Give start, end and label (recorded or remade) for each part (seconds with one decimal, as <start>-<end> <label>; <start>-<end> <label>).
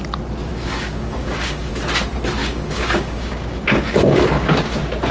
0.0-0.5 recorded; 0.5-1.7 remade; 1.7-2.4 recorded; 2.4-4.5 remade; 4.5-5.1 recorded